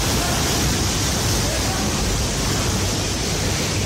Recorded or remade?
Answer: recorded